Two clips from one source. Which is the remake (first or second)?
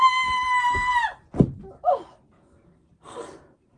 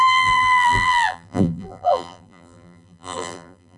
second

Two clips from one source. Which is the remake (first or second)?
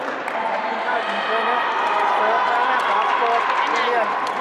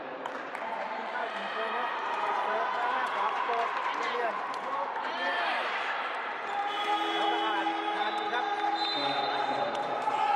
second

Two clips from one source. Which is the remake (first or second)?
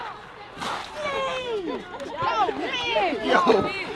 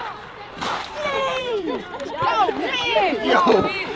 second